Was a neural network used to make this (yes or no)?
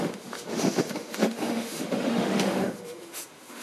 yes